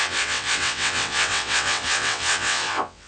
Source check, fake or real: fake